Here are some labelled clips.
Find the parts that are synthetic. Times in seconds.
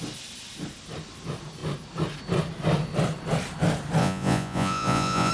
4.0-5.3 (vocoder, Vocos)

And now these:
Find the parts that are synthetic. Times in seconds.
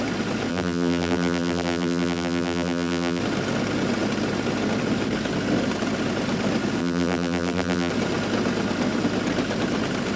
0.5-3.2 (vocoder, BigVGAN v2); 6.8-7.9